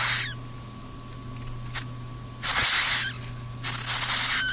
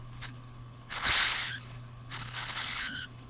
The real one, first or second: first